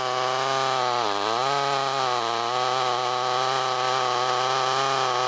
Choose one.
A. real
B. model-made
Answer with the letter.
A